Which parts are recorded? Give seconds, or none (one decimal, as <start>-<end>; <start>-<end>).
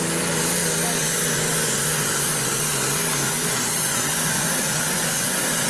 0.0-1.0; 2.6-3.2